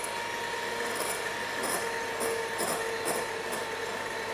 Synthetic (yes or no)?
no